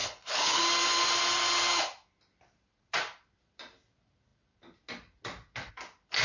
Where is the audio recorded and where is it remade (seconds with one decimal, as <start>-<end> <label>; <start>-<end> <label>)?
0.0-0.6 remade; 0.6-6.2 recorded